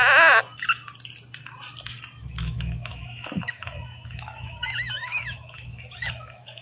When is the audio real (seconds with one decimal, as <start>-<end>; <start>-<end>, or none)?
0.0-2.2